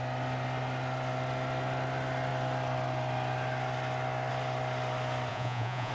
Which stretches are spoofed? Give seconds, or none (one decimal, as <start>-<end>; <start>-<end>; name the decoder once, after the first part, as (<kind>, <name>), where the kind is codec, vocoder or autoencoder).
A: 5.3-5.9 (vocoder, Vocos)